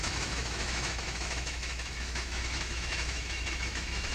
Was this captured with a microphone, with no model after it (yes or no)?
no